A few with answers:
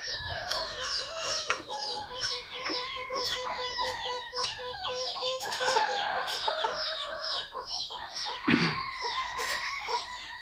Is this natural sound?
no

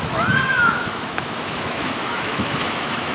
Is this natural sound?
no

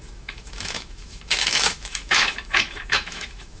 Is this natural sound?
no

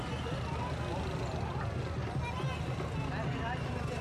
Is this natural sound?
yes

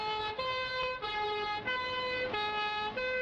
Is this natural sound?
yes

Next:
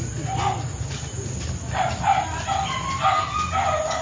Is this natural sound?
yes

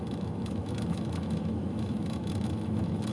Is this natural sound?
no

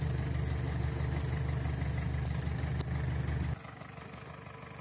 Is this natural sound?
yes